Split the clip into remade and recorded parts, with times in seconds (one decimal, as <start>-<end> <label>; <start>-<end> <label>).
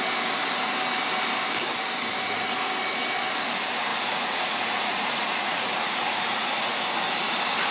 0.0-3.9 recorded; 3.9-6.8 remade; 6.8-7.7 recorded